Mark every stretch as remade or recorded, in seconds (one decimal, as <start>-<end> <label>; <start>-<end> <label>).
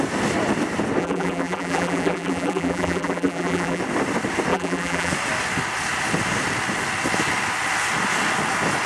0.0-1.0 recorded; 1.0-3.8 remade; 3.8-4.5 recorded; 4.5-5.1 remade; 5.1-8.9 recorded